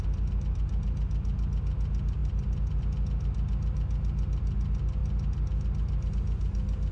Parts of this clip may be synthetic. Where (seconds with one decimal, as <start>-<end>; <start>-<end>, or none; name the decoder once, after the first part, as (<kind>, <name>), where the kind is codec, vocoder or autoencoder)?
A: 2.2-2.8 (vocoder, BigVGAN v2)

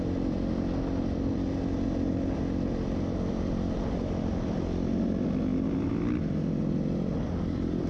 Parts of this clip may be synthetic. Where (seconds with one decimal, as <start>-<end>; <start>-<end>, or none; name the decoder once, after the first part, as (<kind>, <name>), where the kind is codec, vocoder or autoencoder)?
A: none

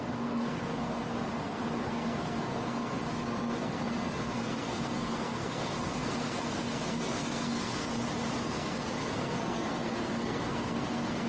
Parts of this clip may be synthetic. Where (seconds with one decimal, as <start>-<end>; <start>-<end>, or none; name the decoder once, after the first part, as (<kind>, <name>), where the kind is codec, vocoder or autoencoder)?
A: 0.0-7.9 (codec, SNAC); 8.4-11.3

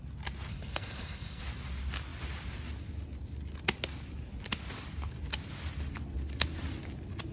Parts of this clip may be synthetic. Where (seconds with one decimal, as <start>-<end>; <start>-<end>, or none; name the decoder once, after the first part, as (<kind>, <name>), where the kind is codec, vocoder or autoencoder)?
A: 0.5-1.4 (codec, SNAC)